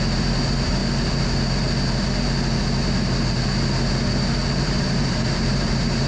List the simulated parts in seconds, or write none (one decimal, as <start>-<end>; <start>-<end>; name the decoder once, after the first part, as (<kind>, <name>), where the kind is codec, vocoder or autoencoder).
0.0-0.8 (vocoder, BigVGAN v2); 4.5-6.1